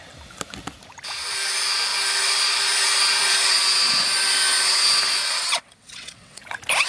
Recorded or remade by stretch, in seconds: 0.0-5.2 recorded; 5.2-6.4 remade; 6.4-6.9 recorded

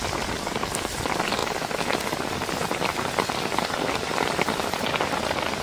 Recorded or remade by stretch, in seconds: 0.0-5.6 recorded

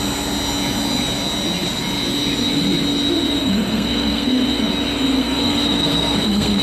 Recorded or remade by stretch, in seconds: 0.0-3.4 recorded; 3.4-4.4 remade; 4.4-5.2 recorded; 5.2-6.6 remade

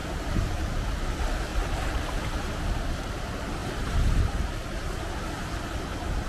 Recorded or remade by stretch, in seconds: 0.0-0.6 remade; 0.6-1.5 recorded; 1.5-2.6 remade; 2.6-3.6 recorded; 3.6-4.2 remade; 4.2-6.3 recorded

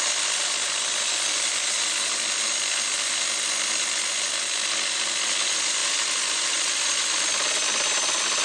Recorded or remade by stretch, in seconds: 0.0-8.4 recorded

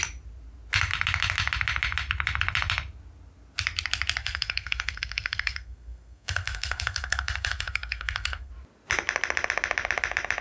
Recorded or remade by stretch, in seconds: 0.0-4.2 recorded; 4.2-8.5 remade; 8.5-10.4 recorded

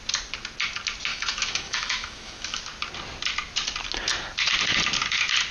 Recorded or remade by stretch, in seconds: 0.0-1.1 recorded; 1.1-2.6 remade; 2.6-5.5 recorded

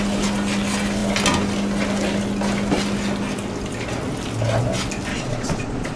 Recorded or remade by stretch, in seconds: 0.0-5.1 recorded; 5.1-6.0 remade